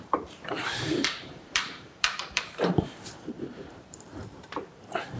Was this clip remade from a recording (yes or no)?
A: yes